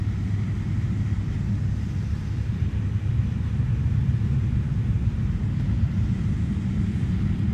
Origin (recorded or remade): recorded